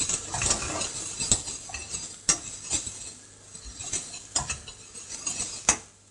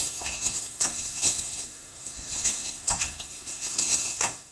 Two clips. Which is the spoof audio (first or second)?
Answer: second